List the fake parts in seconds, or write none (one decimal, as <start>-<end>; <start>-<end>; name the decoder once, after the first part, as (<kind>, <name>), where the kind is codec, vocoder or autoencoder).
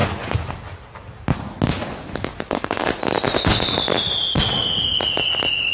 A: 2.5-2.9 (codec, SNAC)